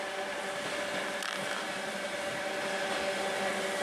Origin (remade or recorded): recorded